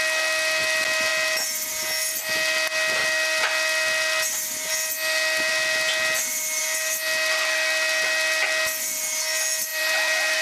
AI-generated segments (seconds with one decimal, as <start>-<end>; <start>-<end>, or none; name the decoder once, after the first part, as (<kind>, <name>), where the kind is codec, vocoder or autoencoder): 9.7-10.4 (vocoder, BigVGAN v2)